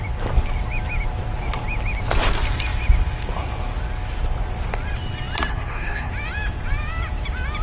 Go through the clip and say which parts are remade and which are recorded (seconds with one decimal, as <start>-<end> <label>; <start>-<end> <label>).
0.0-5.5 recorded; 5.5-6.1 remade; 6.1-7.6 recorded